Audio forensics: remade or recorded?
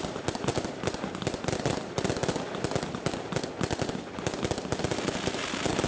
recorded